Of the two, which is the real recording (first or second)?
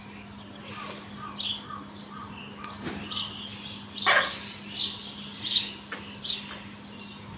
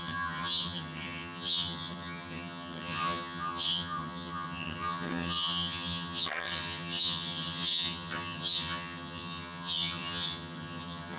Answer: first